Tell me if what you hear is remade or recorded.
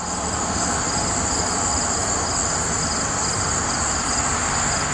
recorded